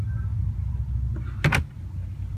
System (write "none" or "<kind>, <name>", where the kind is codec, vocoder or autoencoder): none